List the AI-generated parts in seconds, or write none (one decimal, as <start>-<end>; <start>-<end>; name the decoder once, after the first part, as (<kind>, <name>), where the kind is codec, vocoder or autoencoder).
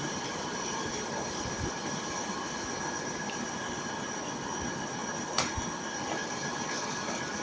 0.0-3.9 (vocoder, BigVGAN v2); 5.0-6.1